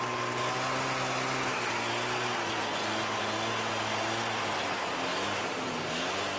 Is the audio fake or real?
real